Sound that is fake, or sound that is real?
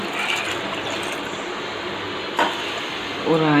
real